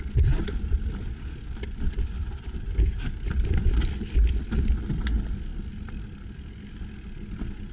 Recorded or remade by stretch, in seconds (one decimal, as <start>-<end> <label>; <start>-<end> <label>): 0.0-7.7 recorded